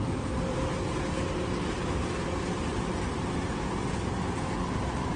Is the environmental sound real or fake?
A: real